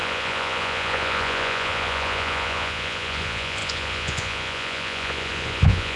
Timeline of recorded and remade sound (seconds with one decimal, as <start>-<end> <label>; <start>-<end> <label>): 0.0-6.0 remade